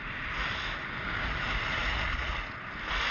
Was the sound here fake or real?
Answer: real